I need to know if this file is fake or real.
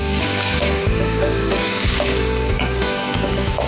fake